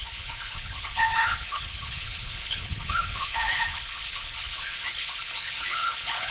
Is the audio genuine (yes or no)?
no